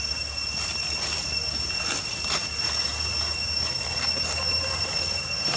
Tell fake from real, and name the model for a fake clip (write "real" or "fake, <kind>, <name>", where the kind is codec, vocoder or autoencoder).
real